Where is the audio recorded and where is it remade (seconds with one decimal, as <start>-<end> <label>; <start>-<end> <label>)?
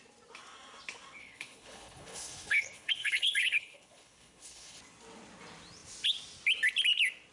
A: 0.0-1.2 recorded; 1.2-4.8 remade; 4.8-7.3 recorded